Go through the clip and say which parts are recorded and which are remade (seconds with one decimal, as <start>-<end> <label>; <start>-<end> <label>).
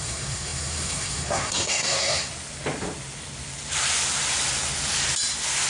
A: 0.0-2.3 remade; 2.3-5.7 recorded